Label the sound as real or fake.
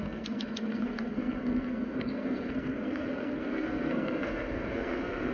fake